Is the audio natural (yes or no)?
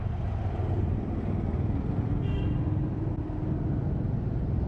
yes